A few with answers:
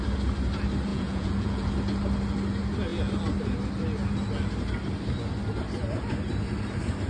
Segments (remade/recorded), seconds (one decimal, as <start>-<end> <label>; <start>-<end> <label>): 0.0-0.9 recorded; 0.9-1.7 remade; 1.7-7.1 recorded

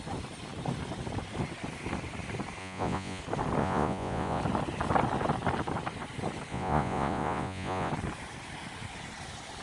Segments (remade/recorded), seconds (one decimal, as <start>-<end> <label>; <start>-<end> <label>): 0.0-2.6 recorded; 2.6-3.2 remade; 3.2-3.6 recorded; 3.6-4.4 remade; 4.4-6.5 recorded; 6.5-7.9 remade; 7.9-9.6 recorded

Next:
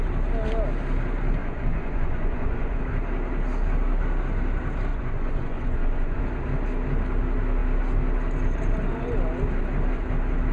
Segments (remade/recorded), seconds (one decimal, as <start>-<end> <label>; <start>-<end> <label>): 0.0-1.4 recorded; 1.4-2.8 remade; 2.8-4.9 recorded; 4.9-6.2 remade; 6.2-10.5 recorded

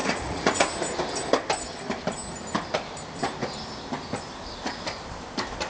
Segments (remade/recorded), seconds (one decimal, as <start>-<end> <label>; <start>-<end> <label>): 0.0-0.6 remade; 0.6-5.7 recorded

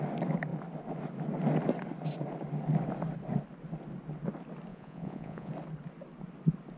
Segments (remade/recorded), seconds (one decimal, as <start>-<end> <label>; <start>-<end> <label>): 0.0-4.7 recorded; 4.7-5.5 remade; 5.5-6.8 recorded

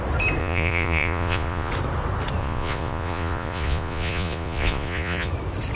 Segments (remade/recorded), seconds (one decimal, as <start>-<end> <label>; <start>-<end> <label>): 0.0-0.4 recorded; 0.4-1.7 remade; 1.7-2.4 recorded; 2.4-5.3 remade; 5.3-5.8 recorded